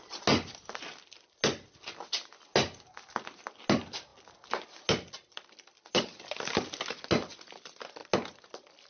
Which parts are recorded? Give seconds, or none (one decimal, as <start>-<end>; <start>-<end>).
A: 0.0-8.9